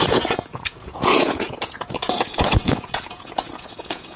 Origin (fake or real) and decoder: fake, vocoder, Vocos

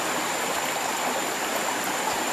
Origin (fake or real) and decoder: real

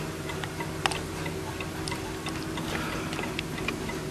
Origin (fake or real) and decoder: real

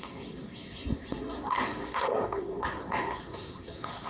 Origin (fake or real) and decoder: fake, codec, SNAC